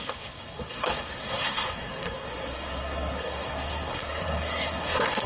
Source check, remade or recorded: remade